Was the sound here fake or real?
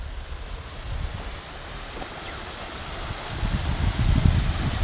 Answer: real